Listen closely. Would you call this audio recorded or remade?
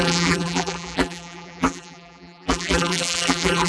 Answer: remade